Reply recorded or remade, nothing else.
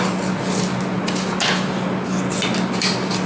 recorded